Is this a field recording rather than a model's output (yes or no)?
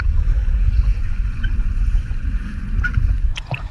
no